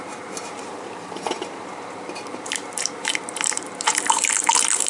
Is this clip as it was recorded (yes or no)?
no